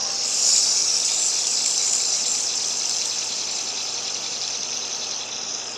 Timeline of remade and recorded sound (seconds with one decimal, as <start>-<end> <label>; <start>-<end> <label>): 0.0-5.8 recorded